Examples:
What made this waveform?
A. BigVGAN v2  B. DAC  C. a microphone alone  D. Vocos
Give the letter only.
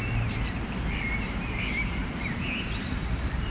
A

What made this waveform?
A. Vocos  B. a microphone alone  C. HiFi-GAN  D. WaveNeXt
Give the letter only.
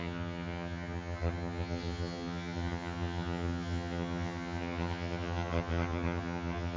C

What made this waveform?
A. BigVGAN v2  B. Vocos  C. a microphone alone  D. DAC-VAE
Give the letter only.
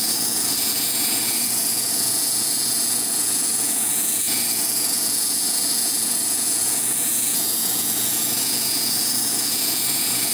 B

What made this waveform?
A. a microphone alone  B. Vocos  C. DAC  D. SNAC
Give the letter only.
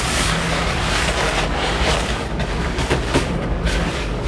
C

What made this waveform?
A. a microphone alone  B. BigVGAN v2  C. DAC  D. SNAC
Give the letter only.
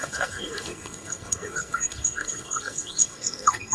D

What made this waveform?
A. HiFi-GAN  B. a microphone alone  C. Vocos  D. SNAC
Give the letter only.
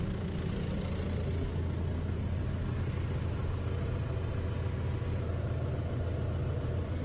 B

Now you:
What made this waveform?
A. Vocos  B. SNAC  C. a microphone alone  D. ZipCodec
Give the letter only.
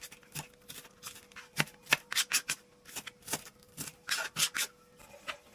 C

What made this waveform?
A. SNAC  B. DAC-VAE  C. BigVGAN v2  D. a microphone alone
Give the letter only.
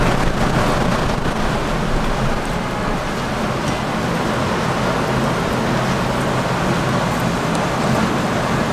D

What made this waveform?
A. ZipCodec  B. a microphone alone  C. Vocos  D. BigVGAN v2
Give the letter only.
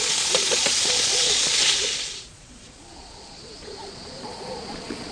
C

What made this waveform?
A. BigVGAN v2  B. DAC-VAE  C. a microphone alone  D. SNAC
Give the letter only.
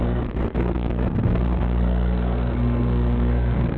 D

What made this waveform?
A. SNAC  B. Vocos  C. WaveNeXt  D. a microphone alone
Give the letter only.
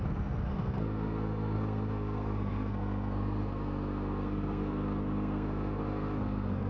A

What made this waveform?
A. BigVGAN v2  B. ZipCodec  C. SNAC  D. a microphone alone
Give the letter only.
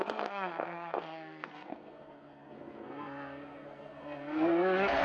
C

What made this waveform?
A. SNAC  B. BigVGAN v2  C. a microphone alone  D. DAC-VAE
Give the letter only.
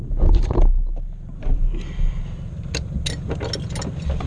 C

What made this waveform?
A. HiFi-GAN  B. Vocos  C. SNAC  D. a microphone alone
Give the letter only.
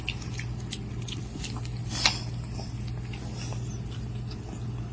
D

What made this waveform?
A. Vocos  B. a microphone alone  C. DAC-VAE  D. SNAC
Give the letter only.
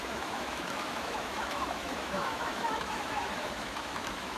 C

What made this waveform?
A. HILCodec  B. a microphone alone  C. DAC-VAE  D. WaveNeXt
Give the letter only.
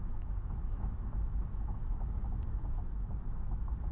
C